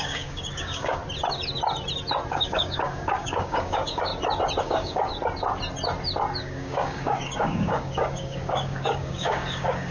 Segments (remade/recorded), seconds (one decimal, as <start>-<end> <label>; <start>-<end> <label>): 0.0-1.0 remade; 1.0-2.3 recorded; 2.3-4.1 remade; 4.1-4.6 recorded; 4.6-5.1 remade; 5.1-6.4 recorded; 6.4-9.9 remade